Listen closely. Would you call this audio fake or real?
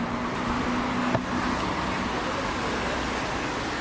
real